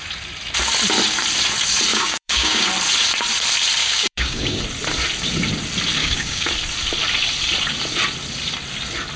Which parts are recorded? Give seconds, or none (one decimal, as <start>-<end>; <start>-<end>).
0.0-1.9; 2.7-3.8; 4.6-6.0; 6.5-9.2